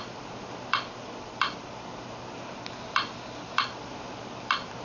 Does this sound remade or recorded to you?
recorded